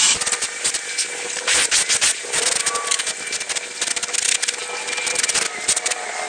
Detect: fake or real real